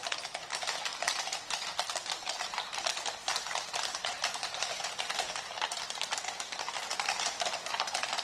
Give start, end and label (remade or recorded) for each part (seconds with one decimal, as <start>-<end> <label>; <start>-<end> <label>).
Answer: 0.0-0.9 recorded; 0.9-5.8 remade; 5.8-8.2 recorded